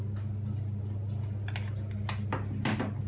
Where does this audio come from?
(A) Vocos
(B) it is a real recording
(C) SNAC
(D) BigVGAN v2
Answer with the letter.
B